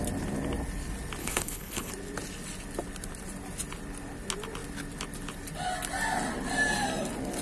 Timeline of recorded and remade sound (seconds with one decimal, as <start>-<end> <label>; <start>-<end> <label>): 0.0-1.2 recorded; 1.2-1.9 remade; 1.9-7.4 recorded